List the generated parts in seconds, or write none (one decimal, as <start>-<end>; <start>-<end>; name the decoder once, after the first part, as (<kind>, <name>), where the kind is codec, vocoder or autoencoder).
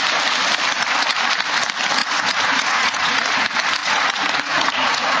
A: 2.0-3.2 (vocoder, Vocos); 3.8-5.2